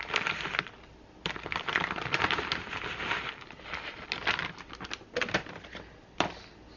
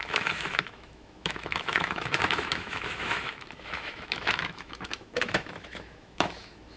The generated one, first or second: second